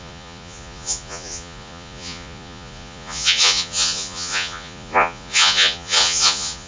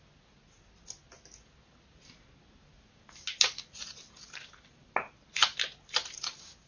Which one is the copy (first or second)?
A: first